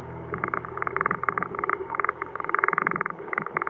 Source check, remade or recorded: remade